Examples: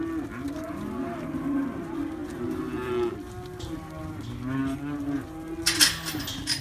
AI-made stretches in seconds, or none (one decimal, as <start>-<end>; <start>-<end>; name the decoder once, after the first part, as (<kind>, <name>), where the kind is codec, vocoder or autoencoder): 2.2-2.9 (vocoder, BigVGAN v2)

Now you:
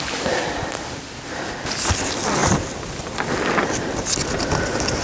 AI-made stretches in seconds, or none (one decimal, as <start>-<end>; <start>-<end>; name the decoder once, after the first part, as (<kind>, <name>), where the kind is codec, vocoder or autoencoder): none

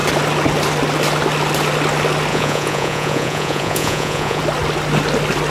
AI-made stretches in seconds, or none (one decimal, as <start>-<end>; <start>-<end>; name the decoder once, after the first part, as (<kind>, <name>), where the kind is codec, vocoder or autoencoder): 2.3-4.4 (vocoder, Vocos)